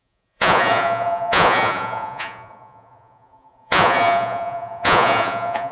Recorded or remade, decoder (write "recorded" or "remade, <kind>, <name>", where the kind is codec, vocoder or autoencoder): remade, vocoder, Vocos